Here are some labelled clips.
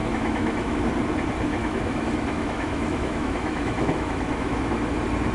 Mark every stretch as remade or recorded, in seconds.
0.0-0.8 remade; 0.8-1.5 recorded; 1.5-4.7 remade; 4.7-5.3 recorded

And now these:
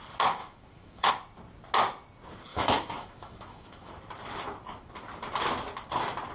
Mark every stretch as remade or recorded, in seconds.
0.0-0.4 recorded; 0.4-1.1 remade; 1.1-2.5 recorded; 2.5-3.9 remade; 3.9-6.3 recorded

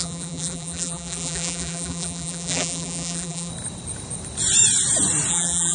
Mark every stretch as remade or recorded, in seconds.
0.0-3.5 remade; 3.5-5.3 recorded; 5.3-5.7 remade

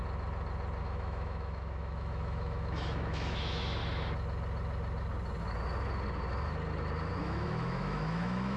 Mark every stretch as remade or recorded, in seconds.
0.0-0.8 recorded; 0.8-3.8 remade; 3.8-7.2 recorded; 7.2-8.6 remade

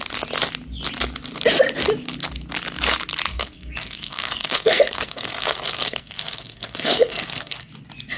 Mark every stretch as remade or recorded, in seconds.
0.0-3.3 recorded; 3.3-7.7 remade; 7.7-8.2 recorded

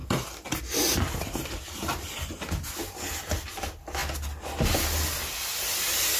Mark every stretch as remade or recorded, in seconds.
0.0-6.2 recorded